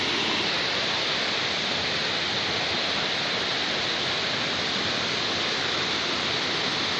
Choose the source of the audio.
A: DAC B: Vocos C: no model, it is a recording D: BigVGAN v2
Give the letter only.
C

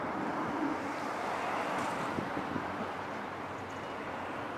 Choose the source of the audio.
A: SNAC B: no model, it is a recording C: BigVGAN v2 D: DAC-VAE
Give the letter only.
B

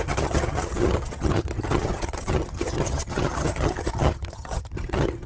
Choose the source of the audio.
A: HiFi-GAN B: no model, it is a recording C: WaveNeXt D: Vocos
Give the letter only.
A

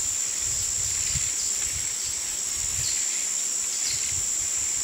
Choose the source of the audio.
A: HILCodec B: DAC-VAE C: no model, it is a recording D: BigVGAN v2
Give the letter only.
C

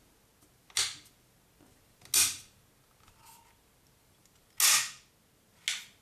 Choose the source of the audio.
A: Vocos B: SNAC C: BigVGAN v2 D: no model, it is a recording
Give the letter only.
D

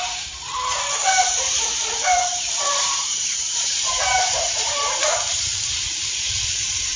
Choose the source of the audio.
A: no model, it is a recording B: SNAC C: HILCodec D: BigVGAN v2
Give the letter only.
D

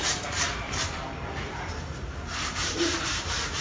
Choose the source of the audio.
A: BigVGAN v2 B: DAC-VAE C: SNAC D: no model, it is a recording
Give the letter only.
A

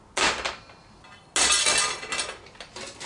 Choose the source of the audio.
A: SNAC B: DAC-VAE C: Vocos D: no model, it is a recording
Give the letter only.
D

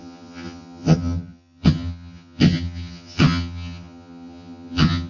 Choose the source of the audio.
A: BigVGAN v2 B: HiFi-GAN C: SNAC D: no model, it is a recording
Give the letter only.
B